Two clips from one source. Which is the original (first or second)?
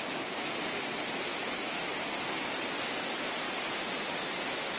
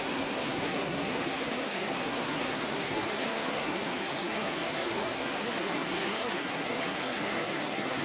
first